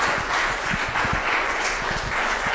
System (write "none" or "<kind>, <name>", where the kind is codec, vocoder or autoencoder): vocoder, Vocos